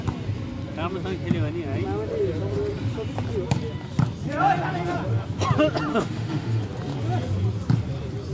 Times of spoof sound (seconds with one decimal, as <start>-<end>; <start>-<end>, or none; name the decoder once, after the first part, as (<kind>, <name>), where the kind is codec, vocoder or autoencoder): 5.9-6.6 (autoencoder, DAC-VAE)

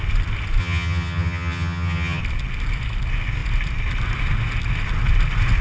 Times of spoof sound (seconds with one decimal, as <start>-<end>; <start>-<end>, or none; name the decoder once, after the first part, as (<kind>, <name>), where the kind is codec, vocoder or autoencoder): 0.6-2.2 (vocoder, HiFi-GAN)

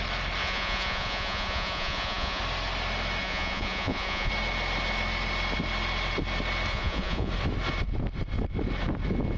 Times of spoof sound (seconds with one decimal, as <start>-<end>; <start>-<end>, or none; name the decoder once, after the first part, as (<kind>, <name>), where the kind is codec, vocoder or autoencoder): 0.4-2.4 (vocoder, Vocos); 3.2-4.3; 6.7-7.3